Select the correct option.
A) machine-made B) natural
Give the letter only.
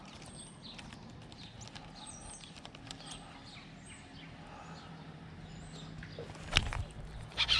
B